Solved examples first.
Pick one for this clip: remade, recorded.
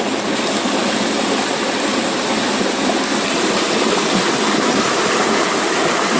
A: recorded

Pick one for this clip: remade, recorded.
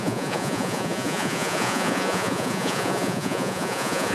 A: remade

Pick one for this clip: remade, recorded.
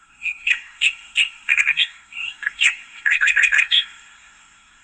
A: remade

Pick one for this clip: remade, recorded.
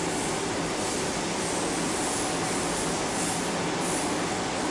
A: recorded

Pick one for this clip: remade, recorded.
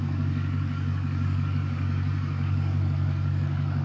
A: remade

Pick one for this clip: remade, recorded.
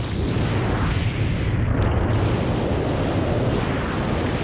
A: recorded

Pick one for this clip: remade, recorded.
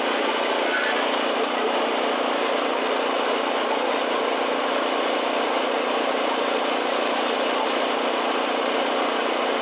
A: recorded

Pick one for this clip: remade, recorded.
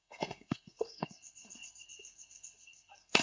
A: remade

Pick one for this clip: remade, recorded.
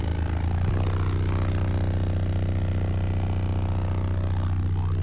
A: recorded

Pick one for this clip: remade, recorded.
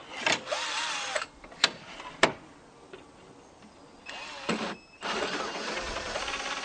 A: recorded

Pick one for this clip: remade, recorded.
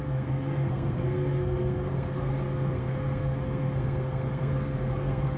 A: remade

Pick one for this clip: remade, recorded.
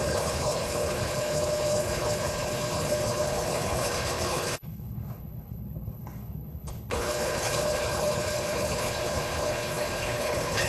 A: remade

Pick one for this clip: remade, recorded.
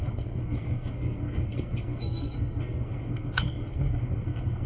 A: remade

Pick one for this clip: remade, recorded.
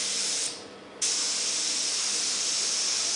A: recorded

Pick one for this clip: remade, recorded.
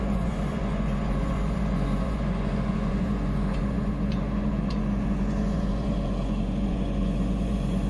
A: remade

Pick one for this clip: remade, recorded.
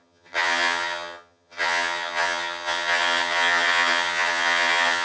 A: remade